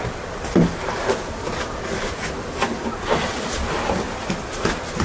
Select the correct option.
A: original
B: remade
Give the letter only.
A